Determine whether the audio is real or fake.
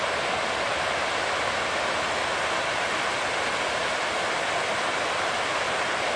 real